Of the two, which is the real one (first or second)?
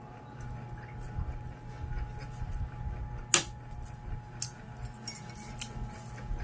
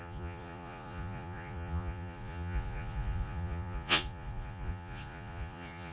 first